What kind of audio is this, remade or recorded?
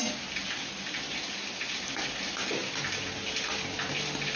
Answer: recorded